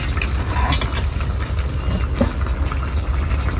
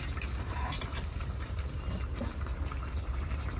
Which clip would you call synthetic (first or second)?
second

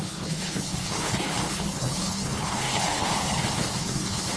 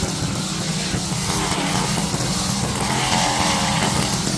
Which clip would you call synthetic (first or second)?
first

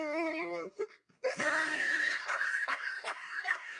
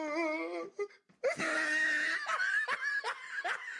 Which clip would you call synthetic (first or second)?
first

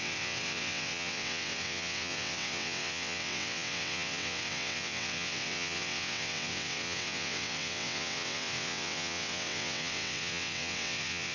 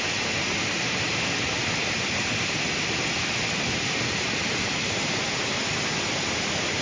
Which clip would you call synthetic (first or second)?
first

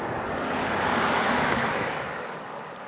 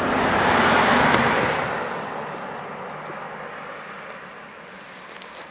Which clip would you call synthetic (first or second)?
first